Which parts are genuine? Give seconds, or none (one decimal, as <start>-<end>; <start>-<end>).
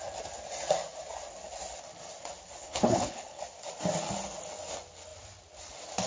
0.0-2.6; 3.4-6.1